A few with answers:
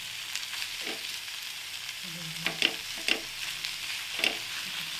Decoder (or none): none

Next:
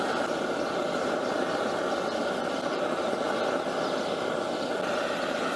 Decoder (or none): vocoder, BigVGAN v2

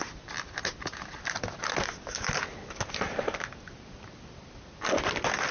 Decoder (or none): none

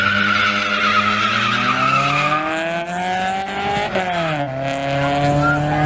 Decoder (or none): none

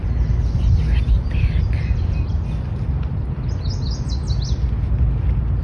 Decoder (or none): none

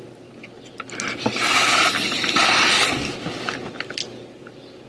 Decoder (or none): none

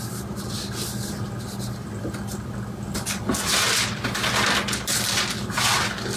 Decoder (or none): none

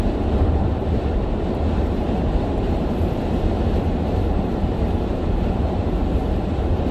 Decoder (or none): vocoder, BigVGAN v2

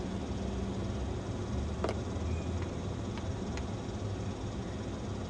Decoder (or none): none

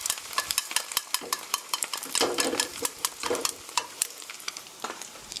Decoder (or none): vocoder, BigVGAN v2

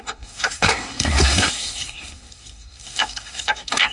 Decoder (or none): codec, SNAC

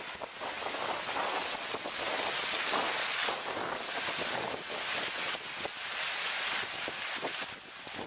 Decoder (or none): none